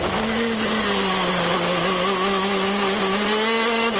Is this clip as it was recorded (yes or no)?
yes